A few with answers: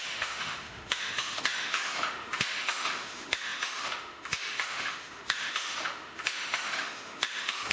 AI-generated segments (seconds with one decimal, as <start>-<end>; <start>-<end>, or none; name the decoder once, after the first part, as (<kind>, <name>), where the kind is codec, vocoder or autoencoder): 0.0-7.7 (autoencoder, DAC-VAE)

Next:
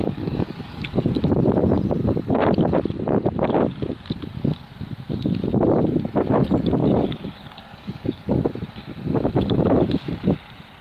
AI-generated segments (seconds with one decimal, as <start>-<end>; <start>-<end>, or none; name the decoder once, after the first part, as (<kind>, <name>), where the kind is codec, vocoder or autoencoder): 0.0-1.1 (codec, DAC); 6.8-8.4

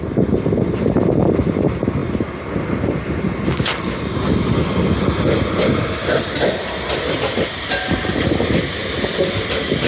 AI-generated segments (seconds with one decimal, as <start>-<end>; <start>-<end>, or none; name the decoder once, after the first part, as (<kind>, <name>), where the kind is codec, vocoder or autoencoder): none

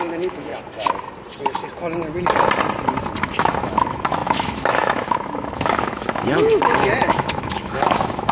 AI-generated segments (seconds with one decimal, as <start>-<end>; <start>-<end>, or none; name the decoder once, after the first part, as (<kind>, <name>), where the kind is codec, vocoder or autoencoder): 0.0-0.5 (autoencoder, DAC-VAE); 3.2-8.3